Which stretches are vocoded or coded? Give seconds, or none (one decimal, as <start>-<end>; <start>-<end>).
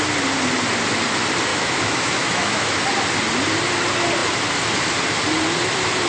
1.5-2.7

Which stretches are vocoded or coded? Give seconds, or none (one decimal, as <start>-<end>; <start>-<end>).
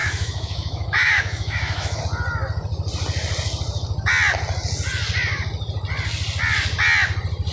0.0-2.0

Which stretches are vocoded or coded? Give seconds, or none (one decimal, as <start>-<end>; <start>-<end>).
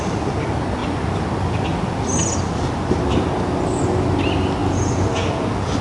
none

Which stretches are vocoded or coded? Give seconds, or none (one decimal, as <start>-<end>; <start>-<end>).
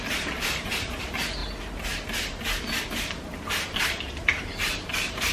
0.0-1.4; 4.4-5.3